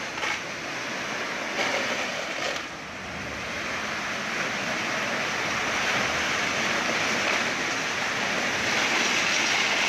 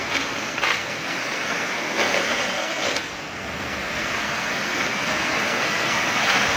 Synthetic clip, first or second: second